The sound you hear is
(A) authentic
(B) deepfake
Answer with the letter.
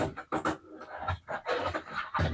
A